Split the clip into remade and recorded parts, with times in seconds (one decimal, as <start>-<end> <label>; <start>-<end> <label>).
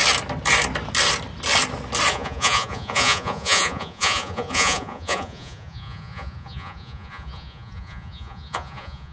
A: 0.0-2.1 recorded; 2.1-9.1 remade